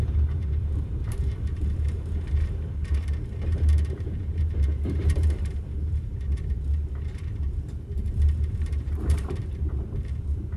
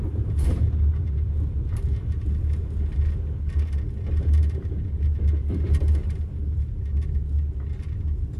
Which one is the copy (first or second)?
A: first